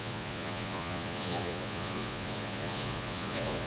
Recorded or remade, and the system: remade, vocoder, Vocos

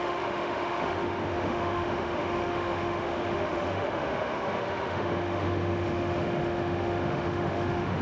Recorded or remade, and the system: remade, autoencoder, DAC-VAE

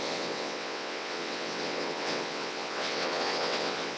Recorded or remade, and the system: remade, vocoder, WaveNeXt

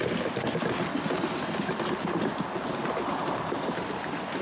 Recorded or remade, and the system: recorded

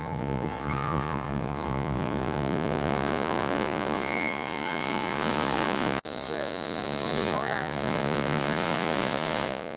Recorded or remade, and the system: remade, vocoder, Vocos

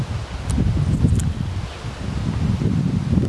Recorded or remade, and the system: recorded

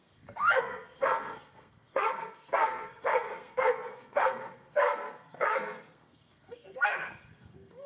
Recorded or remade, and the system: remade, codec, SNAC